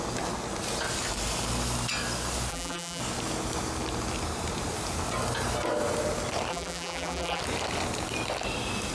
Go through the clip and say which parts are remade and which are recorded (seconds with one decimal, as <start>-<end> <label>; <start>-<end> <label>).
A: 0.0-2.5 recorded; 2.5-3.0 remade; 3.0-6.5 recorded; 6.5-7.4 remade; 7.4-8.9 recorded